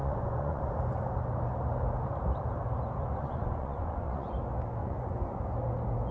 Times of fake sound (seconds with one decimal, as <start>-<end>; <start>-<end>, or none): 0.0-0.6; 3.2-4.3; 4.8-5.4